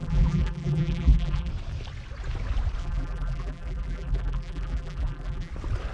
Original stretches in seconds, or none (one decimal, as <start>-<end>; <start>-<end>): 1.5-2.8; 5.5-5.9